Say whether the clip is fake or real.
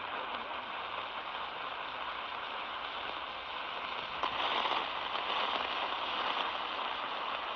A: real